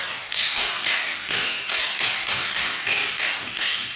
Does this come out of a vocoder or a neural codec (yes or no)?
yes